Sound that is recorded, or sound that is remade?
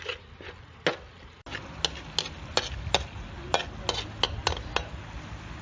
recorded